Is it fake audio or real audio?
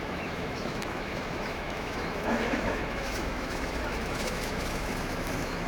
fake